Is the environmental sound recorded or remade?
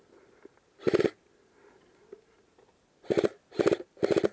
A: recorded